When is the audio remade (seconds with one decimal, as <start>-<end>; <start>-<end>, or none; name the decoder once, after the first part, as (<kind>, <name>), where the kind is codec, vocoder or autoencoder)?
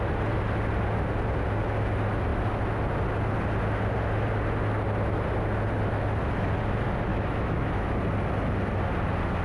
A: 7.1-7.7 (autoencoder, DAC-VAE)